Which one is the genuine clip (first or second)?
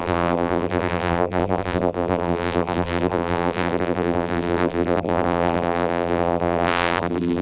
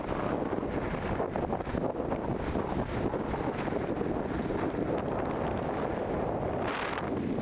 second